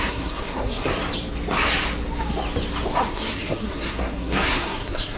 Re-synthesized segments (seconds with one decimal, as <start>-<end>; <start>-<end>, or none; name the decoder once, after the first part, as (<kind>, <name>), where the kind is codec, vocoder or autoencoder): 0.0-0.9 (codec, SNAC); 3.0-5.2